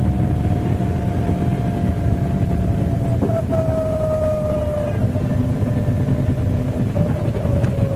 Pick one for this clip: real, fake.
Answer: real